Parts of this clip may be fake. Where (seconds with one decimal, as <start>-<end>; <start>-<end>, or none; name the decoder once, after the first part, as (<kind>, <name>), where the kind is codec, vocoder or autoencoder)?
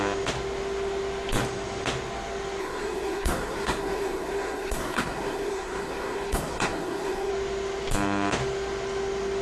2.6-7.3 (codec, SNAC)